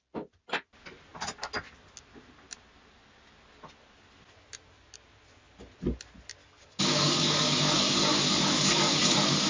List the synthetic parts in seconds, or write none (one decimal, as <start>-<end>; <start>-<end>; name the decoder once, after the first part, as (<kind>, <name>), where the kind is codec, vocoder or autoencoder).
6.4-9.5 (codec, DAC)